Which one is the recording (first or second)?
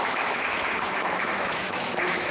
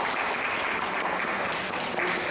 second